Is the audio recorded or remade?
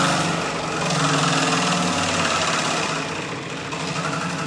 recorded